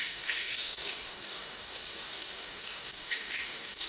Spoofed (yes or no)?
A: yes